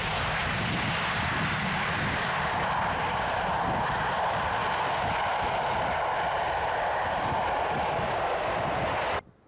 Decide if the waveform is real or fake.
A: real